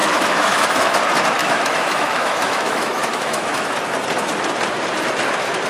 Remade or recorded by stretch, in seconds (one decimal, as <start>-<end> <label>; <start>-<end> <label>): 0.0-1.0 remade; 1.0-1.4 recorded; 1.4-3.7 remade; 3.7-5.7 recorded